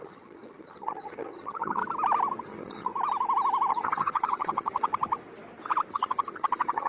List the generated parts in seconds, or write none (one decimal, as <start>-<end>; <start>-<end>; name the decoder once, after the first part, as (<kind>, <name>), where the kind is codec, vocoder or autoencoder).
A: 0.0-1.8 (vocoder, HiFi-GAN); 2.4-2.9; 3.7-4.9; 5.9-6.9